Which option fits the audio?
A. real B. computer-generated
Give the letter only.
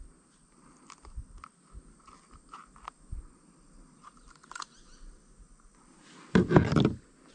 A